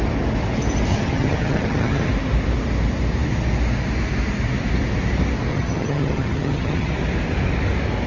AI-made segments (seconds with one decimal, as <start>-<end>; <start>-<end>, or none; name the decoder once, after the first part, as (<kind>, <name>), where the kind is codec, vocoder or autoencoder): 0.9-2.1 (vocoder, HiFi-GAN); 5.5-6.9